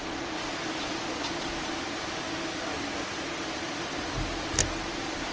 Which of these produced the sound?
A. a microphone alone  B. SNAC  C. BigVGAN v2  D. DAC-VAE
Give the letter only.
A